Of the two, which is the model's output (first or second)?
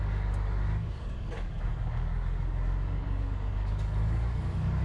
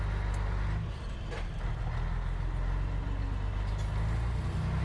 first